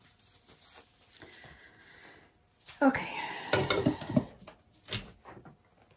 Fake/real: real